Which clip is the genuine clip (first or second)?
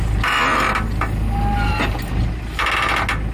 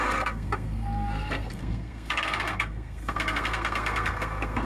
first